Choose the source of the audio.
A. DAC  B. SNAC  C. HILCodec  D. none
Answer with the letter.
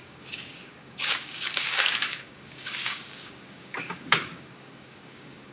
A